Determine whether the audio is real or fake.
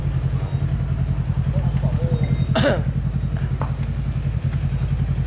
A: real